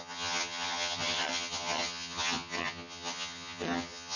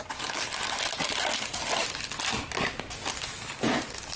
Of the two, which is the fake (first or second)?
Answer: first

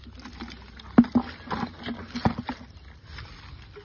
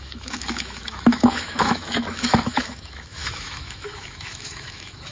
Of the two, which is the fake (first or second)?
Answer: second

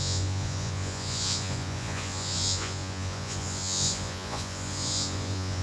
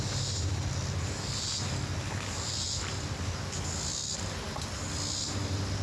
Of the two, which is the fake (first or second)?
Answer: first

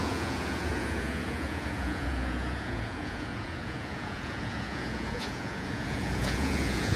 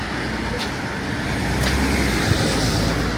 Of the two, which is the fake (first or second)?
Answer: first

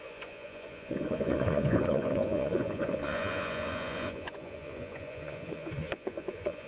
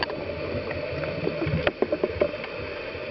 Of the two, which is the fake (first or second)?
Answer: first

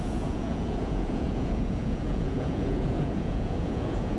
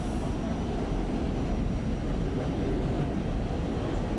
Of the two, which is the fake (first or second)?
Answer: first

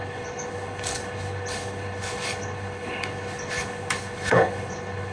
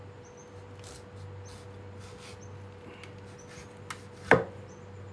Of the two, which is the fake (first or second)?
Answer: first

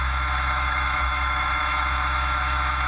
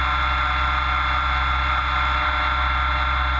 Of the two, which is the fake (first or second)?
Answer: first